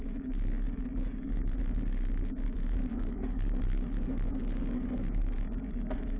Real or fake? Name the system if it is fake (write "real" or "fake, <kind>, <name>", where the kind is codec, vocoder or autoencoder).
fake, codec, DAC